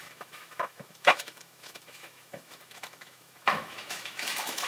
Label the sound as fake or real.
fake